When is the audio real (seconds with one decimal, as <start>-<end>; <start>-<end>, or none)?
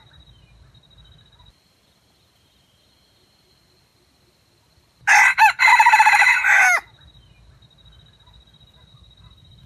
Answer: 0.0-9.7